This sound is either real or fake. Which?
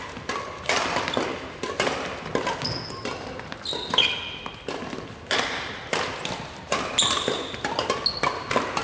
real